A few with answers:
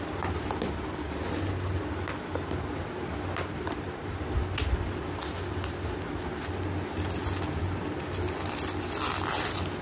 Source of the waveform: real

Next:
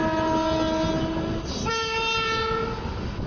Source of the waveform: real